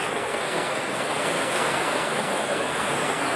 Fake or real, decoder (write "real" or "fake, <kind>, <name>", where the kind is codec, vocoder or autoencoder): fake, codec, SNAC